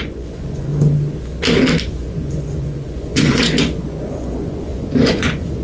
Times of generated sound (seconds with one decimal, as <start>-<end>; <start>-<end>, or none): 0.0-0.7; 1.8-5.6